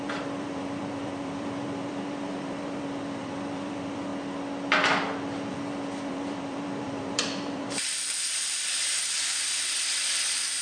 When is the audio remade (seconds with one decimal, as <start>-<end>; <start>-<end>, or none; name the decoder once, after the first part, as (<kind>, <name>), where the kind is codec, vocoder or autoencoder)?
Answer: 0.0-4.1 (vocoder, BigVGAN v2); 5.5-10.6